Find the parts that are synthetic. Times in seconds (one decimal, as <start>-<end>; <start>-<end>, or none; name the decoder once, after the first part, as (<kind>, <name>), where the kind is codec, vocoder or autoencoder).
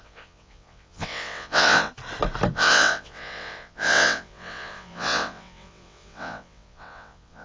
0.0-1.9 (vocoder, WaveNeXt); 2.5-7.4